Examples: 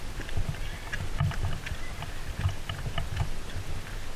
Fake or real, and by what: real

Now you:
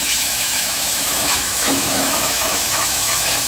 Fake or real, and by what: fake, autoencoder, DAC-VAE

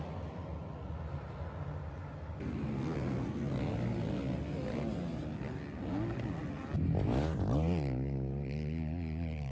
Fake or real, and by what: real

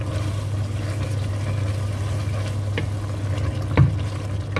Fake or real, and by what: real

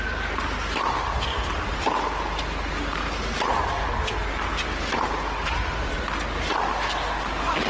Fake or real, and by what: real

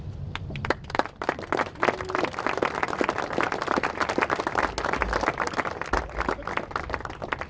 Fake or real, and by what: real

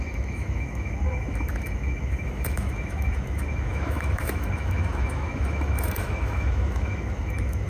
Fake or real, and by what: fake, autoencoder, DAC-VAE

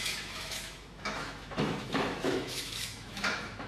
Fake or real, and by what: fake, autoencoder, DAC-VAE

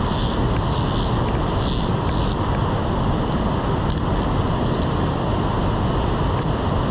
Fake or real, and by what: real